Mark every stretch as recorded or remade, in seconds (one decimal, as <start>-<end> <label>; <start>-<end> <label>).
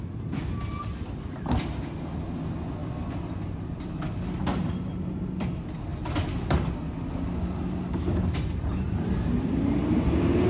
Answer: 0.0-10.5 recorded